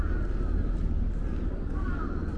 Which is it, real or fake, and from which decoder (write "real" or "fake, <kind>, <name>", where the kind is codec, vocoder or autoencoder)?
real